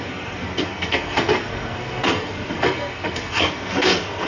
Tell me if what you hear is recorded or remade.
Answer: remade